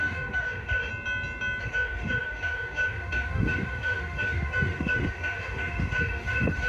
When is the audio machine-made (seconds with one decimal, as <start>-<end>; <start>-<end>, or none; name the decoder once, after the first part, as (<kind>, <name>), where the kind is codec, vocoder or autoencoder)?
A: 0.0-0.9 (autoencoder, DAC-VAE); 1.6-6.7